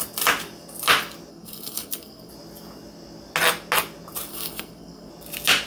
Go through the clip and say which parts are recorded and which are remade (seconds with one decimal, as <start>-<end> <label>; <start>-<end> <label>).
0.0-1.3 recorded; 1.3-2.3 remade; 2.3-4.3 recorded; 4.3-5.1 remade; 5.1-5.7 recorded